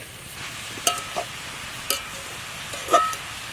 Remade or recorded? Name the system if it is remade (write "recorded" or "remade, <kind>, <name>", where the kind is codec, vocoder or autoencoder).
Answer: recorded